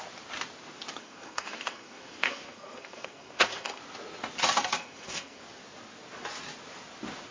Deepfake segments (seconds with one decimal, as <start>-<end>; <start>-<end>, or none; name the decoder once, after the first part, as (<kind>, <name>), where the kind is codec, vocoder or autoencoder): 1.0-3.8 (codec, SNAC); 4.8-5.4